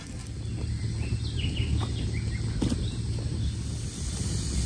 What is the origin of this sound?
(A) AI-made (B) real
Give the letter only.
B